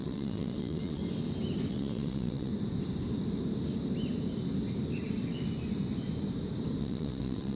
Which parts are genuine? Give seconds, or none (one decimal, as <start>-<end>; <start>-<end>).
1.0-1.7; 2.5-6.8